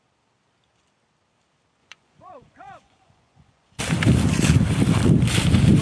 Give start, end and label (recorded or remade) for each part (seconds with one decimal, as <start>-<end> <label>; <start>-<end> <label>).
0.0-1.8 recorded; 1.8-3.8 remade; 3.8-5.8 recorded